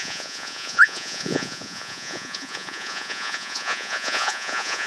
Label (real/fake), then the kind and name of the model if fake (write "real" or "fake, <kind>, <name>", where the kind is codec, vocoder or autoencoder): fake, vocoder, Vocos